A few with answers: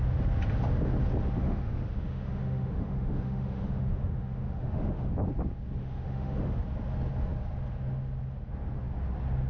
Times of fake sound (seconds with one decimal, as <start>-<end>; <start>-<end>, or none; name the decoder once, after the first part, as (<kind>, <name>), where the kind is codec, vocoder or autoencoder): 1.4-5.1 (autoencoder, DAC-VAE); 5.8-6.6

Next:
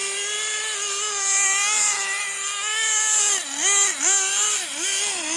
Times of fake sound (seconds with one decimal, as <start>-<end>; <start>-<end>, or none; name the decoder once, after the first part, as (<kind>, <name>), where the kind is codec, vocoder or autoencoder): none

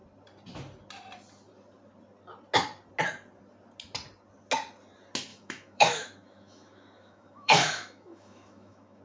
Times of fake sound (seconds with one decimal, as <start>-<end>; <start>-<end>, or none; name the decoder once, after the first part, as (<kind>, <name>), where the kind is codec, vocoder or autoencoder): 5.3-9.0 (autoencoder, DAC-VAE)